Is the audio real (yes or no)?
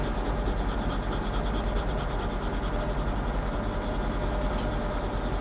yes